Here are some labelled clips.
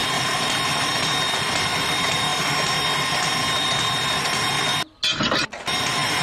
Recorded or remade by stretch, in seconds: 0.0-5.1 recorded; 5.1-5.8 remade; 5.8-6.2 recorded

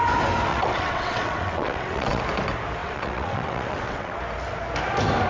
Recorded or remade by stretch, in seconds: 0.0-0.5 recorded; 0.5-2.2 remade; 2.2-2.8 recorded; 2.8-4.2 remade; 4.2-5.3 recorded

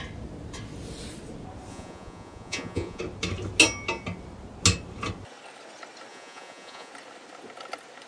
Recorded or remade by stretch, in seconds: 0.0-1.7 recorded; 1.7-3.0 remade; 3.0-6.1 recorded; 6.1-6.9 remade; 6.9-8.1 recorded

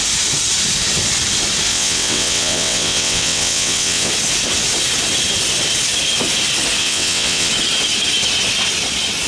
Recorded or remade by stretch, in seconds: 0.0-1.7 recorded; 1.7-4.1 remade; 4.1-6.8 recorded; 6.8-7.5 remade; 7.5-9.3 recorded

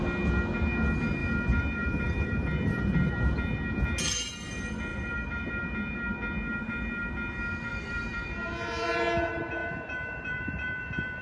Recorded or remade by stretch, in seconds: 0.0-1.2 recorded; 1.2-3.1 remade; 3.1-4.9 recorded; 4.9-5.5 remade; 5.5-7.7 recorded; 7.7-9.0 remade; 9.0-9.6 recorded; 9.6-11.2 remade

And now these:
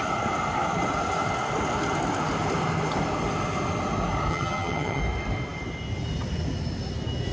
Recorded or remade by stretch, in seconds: 0.0-4.3 recorded; 4.3-5.0 remade; 5.0-7.3 recorded

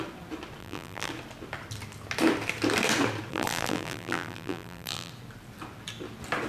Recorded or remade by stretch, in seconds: 0.0-0.6 recorded; 0.6-1.1 remade; 1.1-3.3 recorded; 3.3-5.1 remade; 5.1-6.5 recorded

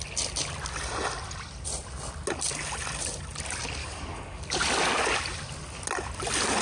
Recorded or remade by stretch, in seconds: 0.0-3.8 recorded; 3.8-4.4 remade; 4.4-6.6 recorded